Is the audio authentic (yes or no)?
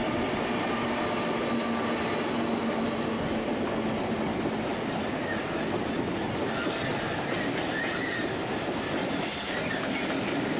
yes